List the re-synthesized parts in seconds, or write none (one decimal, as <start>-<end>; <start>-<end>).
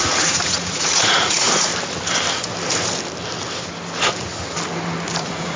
0.0-1.7; 5.1-5.6